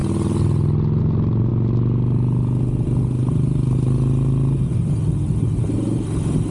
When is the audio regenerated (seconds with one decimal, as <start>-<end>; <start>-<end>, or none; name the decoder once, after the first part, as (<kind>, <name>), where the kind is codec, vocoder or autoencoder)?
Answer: none